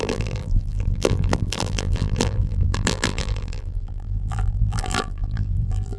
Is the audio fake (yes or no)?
yes